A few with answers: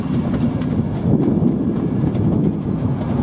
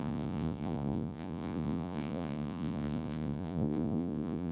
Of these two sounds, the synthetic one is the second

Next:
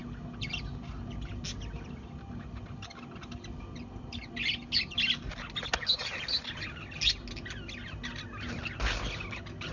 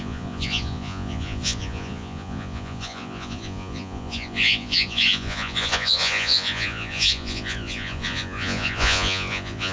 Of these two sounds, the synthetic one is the second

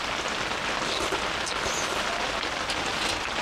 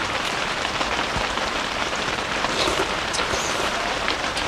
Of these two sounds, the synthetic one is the second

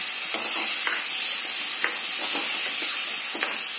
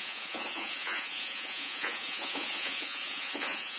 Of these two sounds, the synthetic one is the second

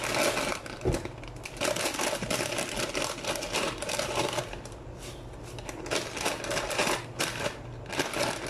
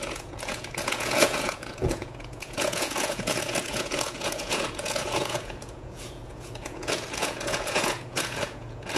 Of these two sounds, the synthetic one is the second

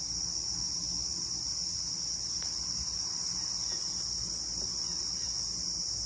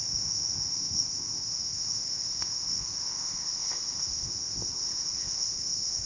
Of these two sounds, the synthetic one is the second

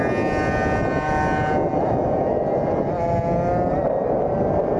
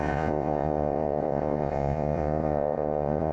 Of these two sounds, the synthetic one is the second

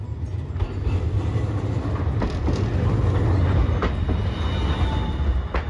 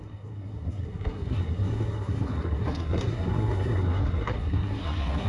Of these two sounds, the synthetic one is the second